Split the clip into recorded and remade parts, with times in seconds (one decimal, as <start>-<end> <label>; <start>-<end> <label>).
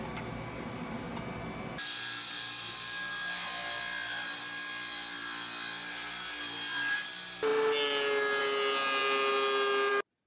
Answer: 0.0-10.3 recorded